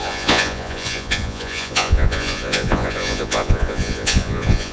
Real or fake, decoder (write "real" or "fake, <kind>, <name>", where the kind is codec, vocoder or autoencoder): fake, vocoder, Vocos